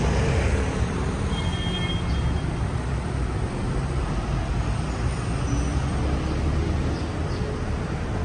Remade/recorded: recorded